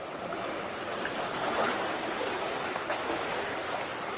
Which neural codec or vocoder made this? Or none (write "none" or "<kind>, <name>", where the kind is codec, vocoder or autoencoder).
none